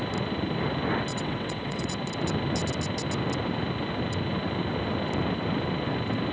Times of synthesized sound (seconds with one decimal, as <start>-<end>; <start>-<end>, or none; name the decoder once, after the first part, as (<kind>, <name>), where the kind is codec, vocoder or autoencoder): 1.1-1.9 (vocoder, WaveNeXt)